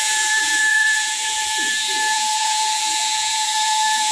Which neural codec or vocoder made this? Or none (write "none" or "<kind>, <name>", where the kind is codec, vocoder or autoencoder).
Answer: vocoder, Vocos